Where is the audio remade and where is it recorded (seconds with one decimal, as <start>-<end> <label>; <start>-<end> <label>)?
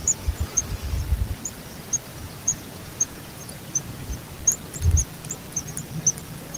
0.0-0.6 remade; 0.6-2.1 recorded; 2.1-4.1 remade; 4.1-6.6 recorded